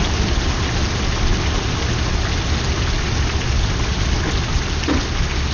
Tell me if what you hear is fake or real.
real